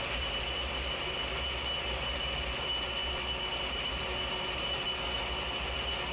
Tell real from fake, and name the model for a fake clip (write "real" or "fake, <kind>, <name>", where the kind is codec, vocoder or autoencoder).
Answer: real